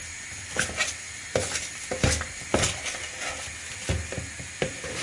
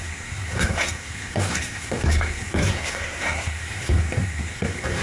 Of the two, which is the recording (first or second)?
first